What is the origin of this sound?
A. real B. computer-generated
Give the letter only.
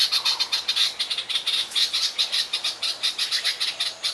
A